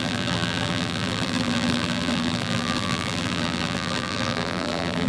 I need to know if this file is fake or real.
fake